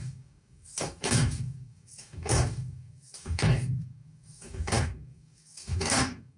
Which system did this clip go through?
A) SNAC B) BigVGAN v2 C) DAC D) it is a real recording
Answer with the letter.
C